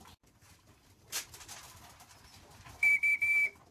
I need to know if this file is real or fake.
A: fake